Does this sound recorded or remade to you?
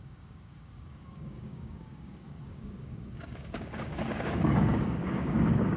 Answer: remade